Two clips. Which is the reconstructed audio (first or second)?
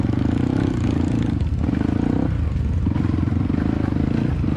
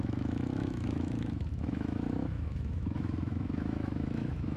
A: second